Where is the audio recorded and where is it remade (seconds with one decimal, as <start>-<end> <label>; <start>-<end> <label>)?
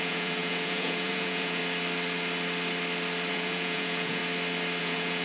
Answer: 0.0-1.6 remade; 1.6-3.3 recorded; 3.3-4.2 remade; 4.2-4.8 recorded; 4.8-5.2 remade